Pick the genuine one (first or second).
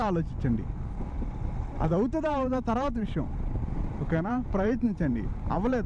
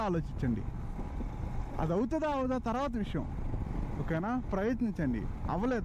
second